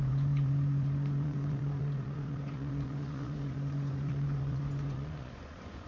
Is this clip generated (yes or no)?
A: yes